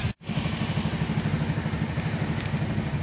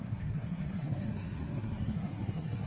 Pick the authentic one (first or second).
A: first